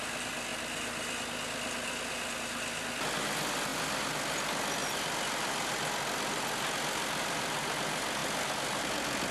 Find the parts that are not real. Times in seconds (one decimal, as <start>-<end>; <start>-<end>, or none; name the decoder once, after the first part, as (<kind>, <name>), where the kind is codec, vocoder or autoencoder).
none